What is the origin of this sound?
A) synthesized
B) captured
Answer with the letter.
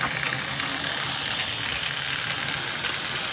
B